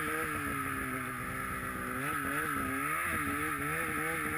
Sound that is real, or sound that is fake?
real